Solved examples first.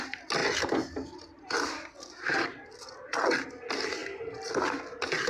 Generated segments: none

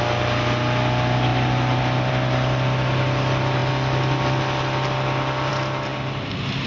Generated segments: none

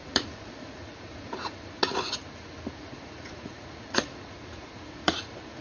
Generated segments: 0.0-2.2; 2.7-5.6